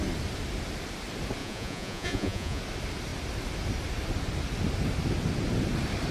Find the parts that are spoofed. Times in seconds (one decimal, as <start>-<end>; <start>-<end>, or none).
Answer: 1.4-2.6